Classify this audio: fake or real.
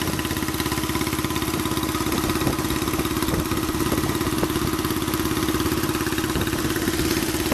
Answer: real